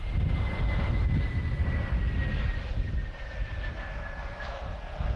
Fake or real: real